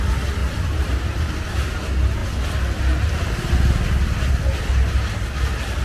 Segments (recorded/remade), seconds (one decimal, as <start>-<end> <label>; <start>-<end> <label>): 0.0-0.4 recorded; 0.4-1.6 remade; 1.6-5.8 recorded